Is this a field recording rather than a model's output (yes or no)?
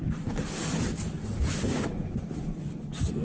yes